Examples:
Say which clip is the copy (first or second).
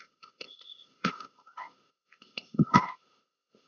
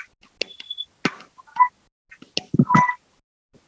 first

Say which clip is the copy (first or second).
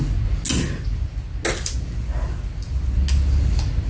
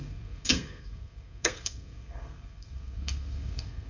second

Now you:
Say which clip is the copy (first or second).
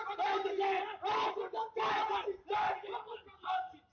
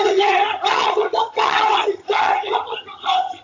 second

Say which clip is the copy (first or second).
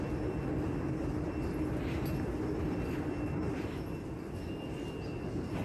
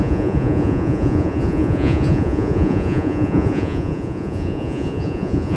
second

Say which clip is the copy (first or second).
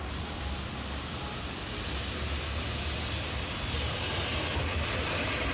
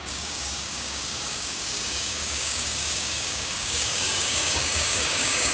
second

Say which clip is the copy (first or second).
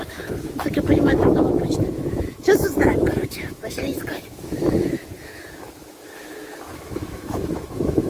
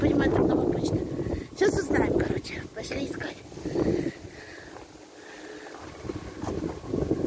first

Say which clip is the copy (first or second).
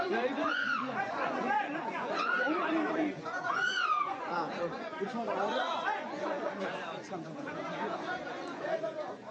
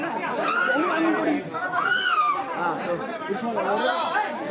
first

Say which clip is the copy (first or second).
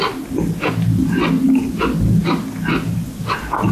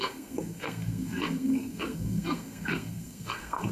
second